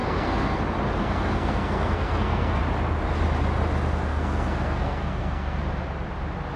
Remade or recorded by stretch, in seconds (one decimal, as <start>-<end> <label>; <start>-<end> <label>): 0.0-0.6 remade; 0.6-1.0 recorded; 1.0-2.6 remade; 2.6-4.1 recorded; 4.1-5.6 remade; 5.6-6.6 recorded